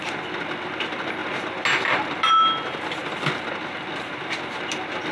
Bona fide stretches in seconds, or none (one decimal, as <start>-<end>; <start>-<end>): 0.0-5.1